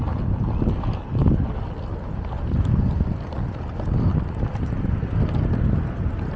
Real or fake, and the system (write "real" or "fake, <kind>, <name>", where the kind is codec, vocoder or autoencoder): real